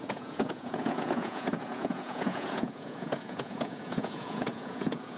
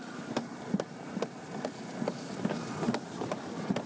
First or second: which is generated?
first